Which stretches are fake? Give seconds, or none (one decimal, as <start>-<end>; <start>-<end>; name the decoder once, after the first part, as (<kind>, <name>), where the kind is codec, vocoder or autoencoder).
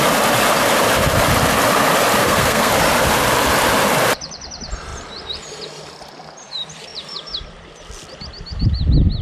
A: 2.2-2.7 (codec, SNAC)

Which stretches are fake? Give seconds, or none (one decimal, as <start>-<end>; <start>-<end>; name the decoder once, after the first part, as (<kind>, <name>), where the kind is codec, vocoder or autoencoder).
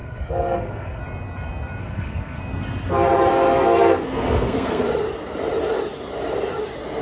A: 0.0-1.0 (codec, SNAC); 1.8-2.4; 3.3-4.8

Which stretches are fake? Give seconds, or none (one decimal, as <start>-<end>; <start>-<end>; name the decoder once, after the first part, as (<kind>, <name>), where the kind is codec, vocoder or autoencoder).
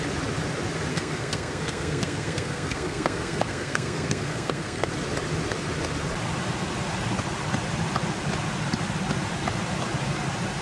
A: 0.9-4.9 (codec, SNAC)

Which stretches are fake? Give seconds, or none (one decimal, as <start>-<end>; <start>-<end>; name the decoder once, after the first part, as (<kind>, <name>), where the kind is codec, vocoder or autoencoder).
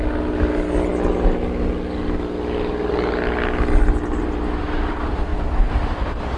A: none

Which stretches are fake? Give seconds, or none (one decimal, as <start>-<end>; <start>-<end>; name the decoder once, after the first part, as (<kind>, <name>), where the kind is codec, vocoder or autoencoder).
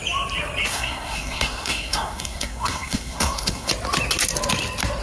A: 0.7-3.7 (codec, SNAC)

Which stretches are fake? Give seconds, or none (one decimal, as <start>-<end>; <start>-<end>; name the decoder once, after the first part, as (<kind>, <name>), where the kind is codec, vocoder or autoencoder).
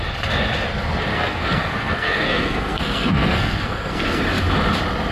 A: 1.1-4.2 (codec, SNAC)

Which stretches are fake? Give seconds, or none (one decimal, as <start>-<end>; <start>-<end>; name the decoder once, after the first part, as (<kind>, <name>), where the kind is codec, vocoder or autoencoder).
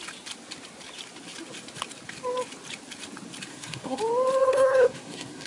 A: 3.5-4.0 (codec, SNAC); 4.4-5.5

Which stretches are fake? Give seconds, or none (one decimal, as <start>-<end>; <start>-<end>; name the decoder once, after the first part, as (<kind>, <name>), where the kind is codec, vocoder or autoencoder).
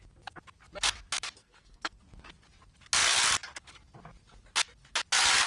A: 1.4-2.0 (codec, SNAC)